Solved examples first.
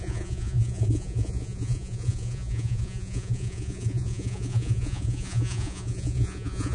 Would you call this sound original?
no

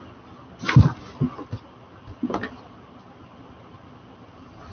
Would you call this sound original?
yes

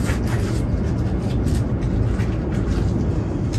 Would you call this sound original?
yes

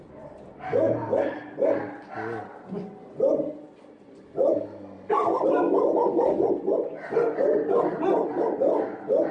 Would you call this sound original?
yes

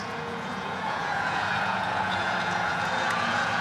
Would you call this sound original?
no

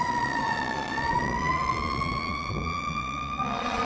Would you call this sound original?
no